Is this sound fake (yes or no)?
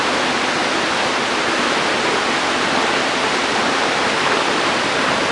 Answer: no